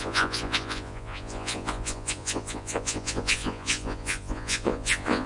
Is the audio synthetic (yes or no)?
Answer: yes